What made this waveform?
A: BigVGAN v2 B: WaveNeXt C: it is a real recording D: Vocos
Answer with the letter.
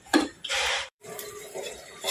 A